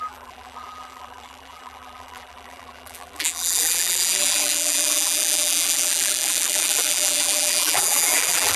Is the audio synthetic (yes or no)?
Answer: yes